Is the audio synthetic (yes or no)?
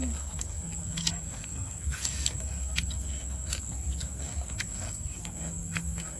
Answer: yes